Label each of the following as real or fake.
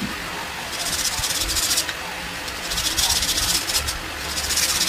real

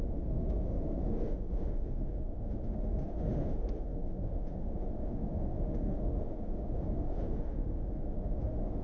fake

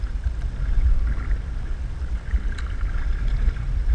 real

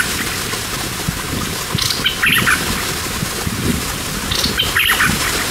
real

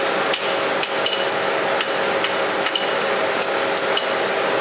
real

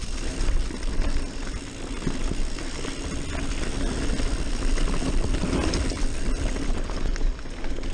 real